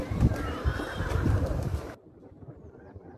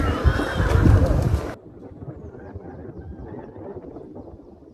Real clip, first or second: second